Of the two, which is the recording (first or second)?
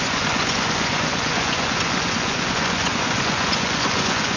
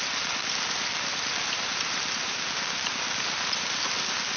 second